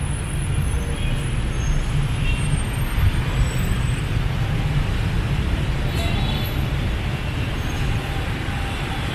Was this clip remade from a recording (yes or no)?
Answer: no